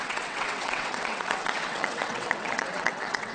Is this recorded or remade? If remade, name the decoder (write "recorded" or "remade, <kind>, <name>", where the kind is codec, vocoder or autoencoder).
remade, vocoder, WaveNeXt